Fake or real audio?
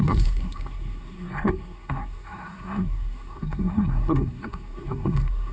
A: fake